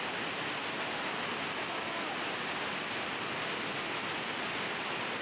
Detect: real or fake real